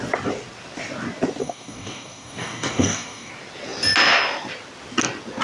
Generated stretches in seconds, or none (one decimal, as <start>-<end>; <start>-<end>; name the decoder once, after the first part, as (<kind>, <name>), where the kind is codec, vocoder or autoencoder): 1.4-3.3 (codec, DAC)